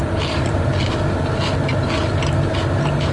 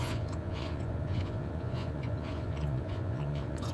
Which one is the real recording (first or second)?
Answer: first